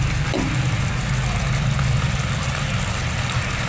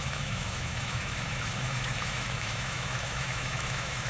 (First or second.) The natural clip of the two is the first